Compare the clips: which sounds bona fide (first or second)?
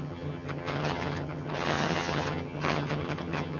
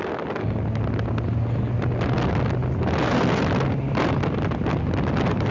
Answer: second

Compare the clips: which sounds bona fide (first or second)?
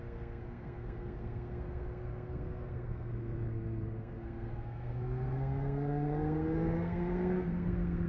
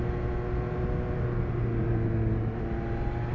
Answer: second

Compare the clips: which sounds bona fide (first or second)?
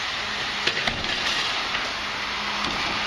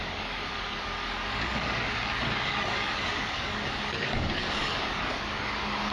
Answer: first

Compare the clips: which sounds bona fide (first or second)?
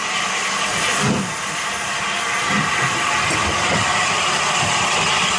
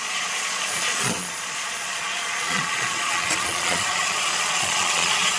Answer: first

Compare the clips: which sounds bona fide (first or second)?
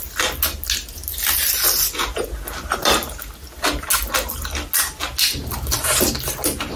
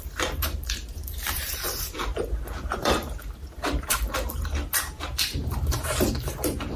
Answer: first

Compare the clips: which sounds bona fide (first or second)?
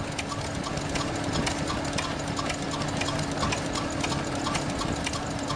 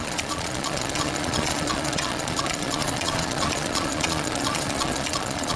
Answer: first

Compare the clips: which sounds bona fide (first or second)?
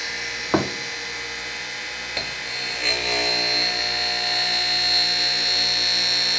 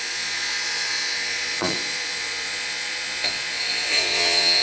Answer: first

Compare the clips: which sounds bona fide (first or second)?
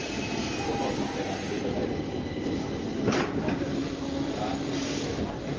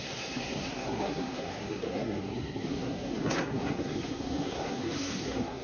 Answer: first